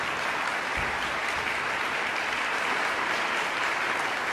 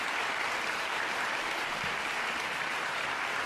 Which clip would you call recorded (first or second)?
first